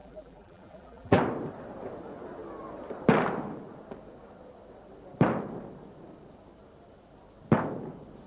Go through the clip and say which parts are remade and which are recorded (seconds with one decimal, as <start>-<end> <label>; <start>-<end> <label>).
0.0-1.2 remade; 1.2-8.3 recorded